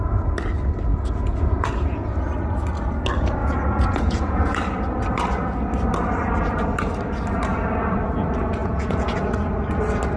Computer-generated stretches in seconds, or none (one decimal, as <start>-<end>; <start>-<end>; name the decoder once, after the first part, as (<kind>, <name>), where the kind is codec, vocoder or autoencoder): 0.9-2.2 (vocoder, Vocos); 3.4-4.5; 8.6-9.3